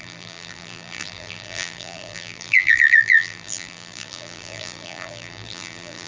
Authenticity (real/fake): fake